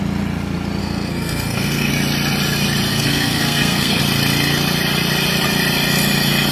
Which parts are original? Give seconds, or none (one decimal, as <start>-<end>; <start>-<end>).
0.0-0.8; 1.9-2.9; 4.0-6.5